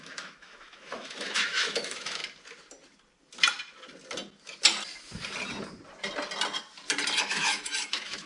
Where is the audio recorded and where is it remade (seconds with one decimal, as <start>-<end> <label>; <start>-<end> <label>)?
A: 0.0-2.2 remade; 2.2-7.2 recorded; 7.2-8.3 remade